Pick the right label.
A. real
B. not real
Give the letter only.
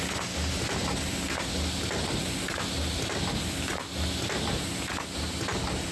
A